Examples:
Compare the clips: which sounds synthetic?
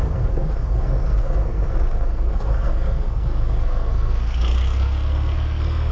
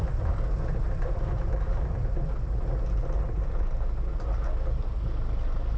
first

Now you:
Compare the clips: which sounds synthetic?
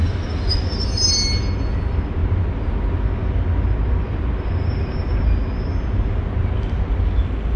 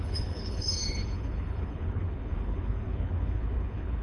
second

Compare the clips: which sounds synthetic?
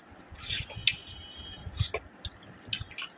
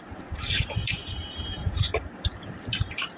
second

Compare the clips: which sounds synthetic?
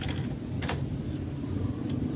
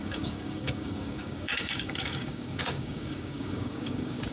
second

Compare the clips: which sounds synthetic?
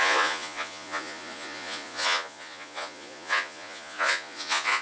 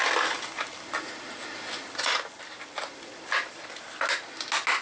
first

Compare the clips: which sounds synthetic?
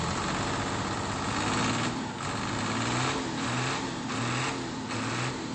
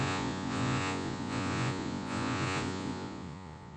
second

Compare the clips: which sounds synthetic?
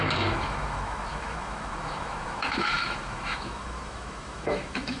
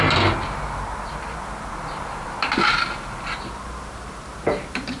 first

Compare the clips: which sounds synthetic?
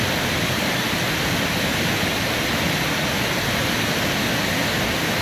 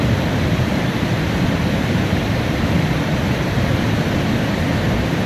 second